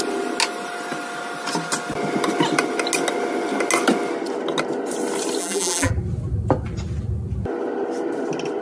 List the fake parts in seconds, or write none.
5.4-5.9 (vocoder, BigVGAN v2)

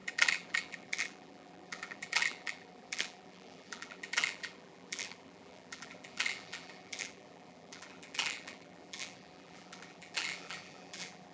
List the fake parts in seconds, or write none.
0.0-11.3 (vocoder, BigVGAN v2)

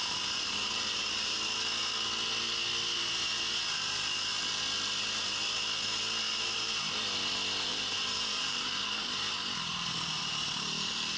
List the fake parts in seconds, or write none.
0.0-1.3 (vocoder, BigVGAN v2); 6.3-6.9; 7.7-10.2

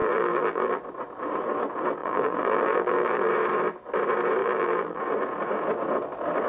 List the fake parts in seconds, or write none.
0.0-0.8 (vocoder, BigVGAN v2); 2.0-3.3; 4.4-5.0